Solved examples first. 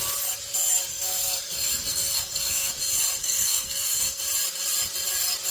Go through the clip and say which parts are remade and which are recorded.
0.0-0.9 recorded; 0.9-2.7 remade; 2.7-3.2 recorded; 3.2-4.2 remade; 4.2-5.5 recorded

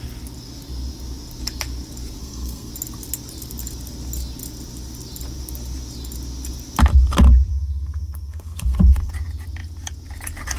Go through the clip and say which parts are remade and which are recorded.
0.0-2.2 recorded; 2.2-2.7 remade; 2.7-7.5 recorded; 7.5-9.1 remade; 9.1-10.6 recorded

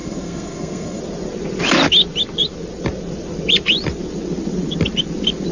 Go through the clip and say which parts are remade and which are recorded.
0.0-1.0 remade; 1.0-5.5 recorded

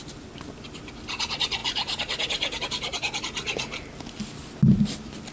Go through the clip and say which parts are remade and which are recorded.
0.0-5.3 recorded

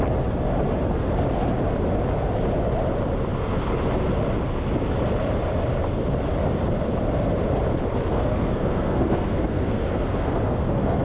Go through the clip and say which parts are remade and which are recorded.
0.0-8.1 recorded; 8.1-11.0 remade